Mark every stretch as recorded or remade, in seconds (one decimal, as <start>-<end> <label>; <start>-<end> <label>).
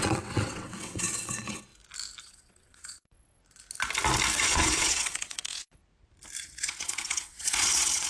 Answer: 0.0-1.7 remade; 1.7-2.2 recorded; 2.2-3.4 remade; 3.4-4.4 recorded; 4.4-5.8 remade; 5.8-6.4 recorded; 6.4-8.1 remade